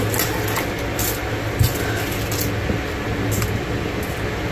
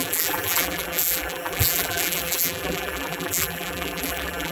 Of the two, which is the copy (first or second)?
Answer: second